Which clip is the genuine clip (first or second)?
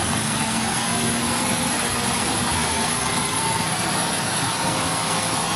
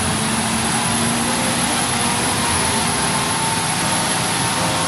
second